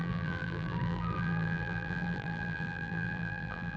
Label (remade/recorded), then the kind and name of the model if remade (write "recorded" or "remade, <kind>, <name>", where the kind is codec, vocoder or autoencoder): remade, vocoder, BigVGAN v2